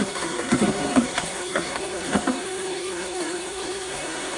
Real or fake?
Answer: fake